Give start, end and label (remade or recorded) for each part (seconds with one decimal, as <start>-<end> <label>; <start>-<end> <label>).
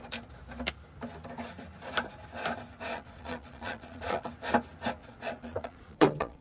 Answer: 0.0-2.9 recorded; 2.9-4.3 remade; 4.3-5.0 recorded; 5.0-6.4 remade